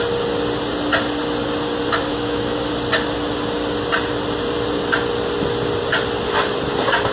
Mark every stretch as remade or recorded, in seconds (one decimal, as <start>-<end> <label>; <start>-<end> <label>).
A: 0.0-2.1 recorded; 2.1-2.7 remade; 2.7-7.1 recorded